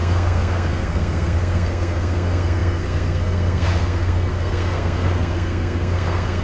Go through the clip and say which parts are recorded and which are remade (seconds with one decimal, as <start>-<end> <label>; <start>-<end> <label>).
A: 0.0-6.4 remade